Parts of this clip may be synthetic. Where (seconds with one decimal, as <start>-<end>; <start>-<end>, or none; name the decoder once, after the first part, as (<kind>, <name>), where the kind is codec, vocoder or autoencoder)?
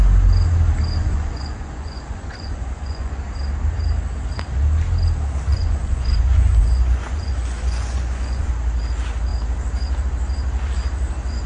1.0-3.1 (vocoder, Vocos); 5.5-8.5